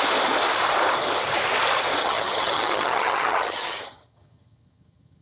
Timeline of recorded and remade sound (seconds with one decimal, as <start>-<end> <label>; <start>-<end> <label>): 0.0-2.0 recorded; 2.0-5.2 remade